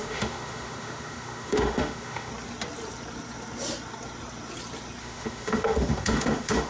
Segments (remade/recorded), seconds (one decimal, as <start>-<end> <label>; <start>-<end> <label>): 0.0-2.3 remade; 2.3-5.0 recorded; 5.0-6.7 remade